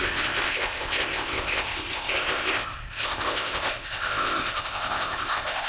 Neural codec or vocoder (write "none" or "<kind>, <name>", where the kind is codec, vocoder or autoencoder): codec, ZipCodec